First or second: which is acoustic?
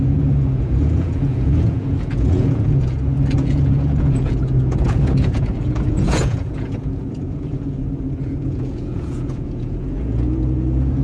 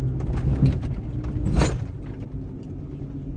second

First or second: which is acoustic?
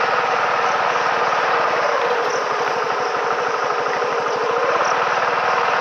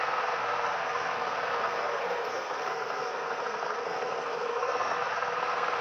first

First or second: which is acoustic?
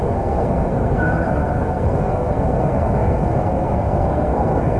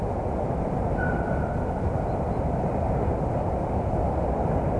second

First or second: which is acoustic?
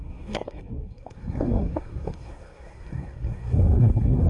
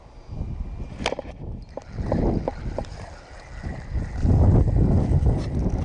second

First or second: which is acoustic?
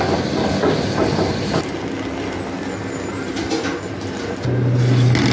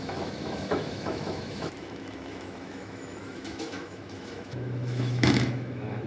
first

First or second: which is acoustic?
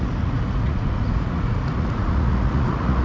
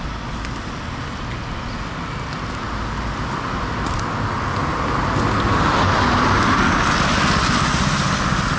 second